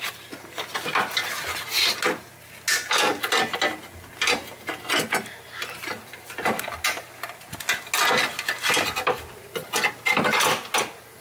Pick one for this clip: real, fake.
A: real